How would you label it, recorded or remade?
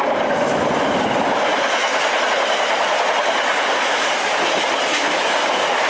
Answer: recorded